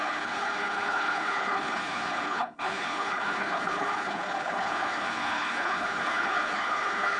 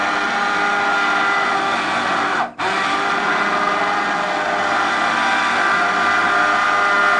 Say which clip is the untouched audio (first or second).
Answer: second